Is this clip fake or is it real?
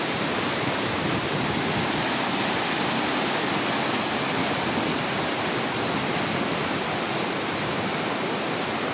real